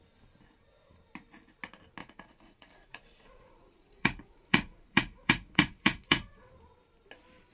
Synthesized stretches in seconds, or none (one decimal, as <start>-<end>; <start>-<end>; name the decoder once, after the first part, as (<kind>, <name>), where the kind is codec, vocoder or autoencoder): 2.0-6.5 (vocoder, Vocos)